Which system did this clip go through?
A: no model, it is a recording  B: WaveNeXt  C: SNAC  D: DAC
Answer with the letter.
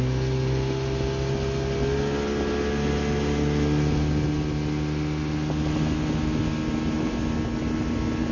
A